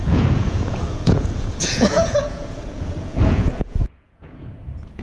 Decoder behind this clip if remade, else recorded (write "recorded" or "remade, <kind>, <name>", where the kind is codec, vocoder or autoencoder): remade, vocoder, Vocos